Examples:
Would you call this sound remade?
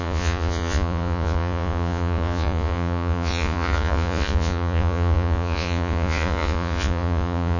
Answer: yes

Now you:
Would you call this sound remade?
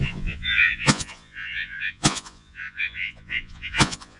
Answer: yes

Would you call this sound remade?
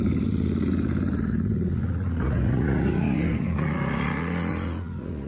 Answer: yes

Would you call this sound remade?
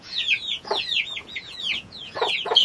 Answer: yes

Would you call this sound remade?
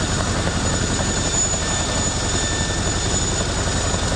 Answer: no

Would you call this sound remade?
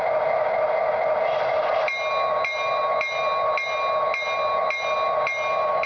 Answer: no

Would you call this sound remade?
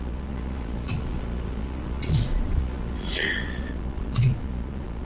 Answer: yes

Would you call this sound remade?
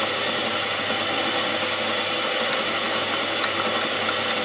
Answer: no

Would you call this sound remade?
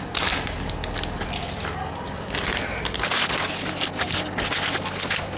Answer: no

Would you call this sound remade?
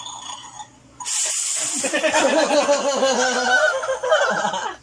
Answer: no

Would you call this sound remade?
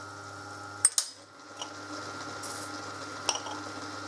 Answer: no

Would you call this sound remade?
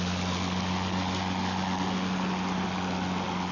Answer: no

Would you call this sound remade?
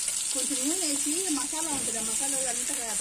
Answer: no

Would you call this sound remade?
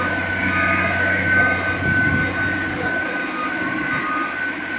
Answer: no